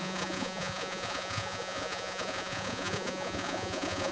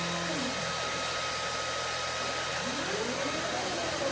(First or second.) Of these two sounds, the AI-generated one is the first